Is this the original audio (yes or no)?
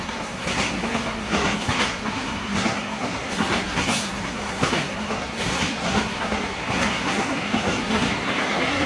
no